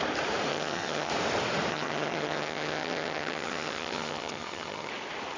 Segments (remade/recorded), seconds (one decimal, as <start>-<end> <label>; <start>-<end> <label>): 0.0-0.5 recorded; 0.5-1.1 remade; 1.1-1.7 recorded; 1.7-4.9 remade; 4.9-5.4 recorded